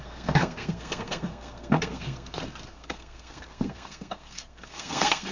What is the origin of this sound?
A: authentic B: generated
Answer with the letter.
B